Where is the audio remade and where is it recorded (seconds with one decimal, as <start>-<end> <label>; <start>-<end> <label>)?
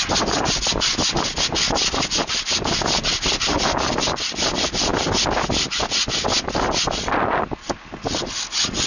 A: 0.0-8.9 recorded